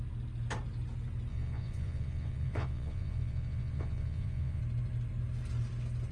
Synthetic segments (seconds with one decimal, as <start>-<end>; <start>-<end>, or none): 1.3-4.6